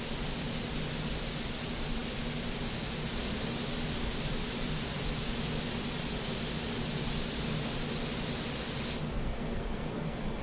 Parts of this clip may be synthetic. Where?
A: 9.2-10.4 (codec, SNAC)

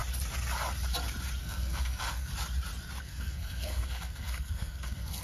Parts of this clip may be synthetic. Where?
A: 1.4-2.3 (codec, SNAC); 3.0-5.2

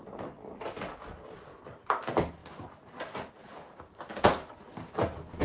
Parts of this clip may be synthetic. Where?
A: none

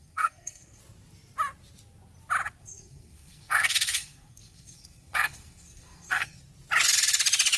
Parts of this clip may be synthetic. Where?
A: 0.0-0.8 (codec, SNAC); 2.6-6.4

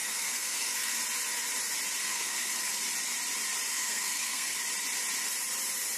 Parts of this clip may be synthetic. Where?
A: 0.0-1.0 (codec, SNAC); 2.0-2.7; 3.7-4.6

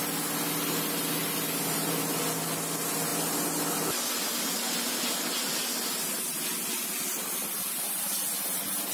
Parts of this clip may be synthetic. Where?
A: none